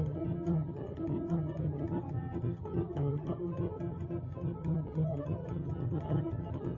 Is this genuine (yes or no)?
no